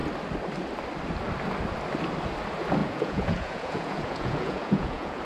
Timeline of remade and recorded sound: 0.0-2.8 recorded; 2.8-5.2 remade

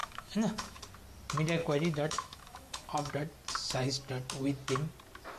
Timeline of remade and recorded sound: 0.0-0.8 remade; 0.8-1.6 recorded; 1.6-3.1 remade; 3.1-5.4 recorded